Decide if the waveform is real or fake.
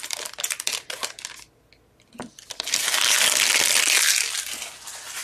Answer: real